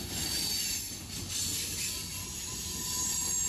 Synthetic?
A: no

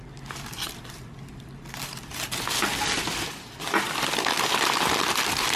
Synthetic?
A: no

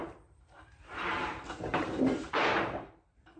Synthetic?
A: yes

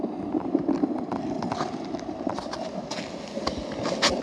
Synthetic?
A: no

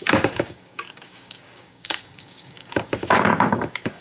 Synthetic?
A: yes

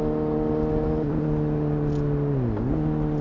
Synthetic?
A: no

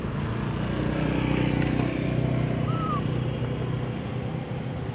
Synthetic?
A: no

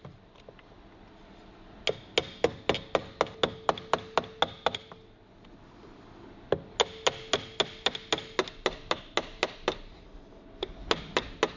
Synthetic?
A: no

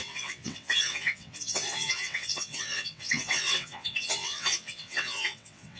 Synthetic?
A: yes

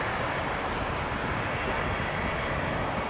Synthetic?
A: no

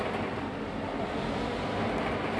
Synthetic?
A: no